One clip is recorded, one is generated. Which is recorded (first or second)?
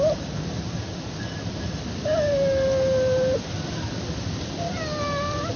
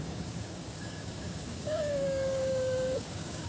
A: first